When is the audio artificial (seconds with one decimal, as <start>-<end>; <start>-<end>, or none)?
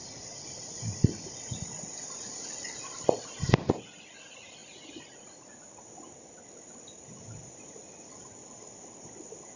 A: none